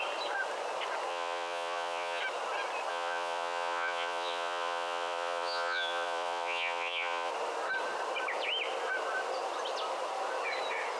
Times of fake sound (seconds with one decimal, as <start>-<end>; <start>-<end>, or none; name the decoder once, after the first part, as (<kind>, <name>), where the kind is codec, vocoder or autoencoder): 1.1-2.2 (vocoder, Vocos); 2.9-7.3